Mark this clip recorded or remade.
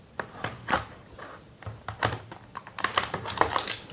remade